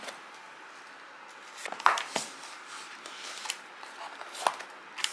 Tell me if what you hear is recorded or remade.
recorded